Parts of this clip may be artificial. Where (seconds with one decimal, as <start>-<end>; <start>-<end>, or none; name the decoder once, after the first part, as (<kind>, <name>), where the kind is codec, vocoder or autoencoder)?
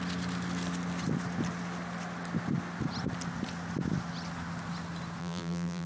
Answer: 5.2-5.9 (vocoder, BigVGAN v2)